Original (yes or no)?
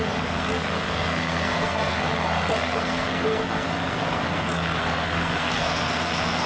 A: no